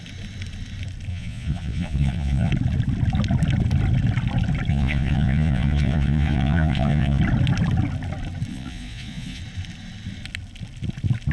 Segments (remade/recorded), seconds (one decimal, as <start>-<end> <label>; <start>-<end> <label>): 0.0-1.1 recorded; 1.1-2.5 remade; 2.5-4.7 recorded; 4.7-7.2 remade; 7.2-8.5 recorded; 8.5-9.4 remade; 9.4-11.3 recorded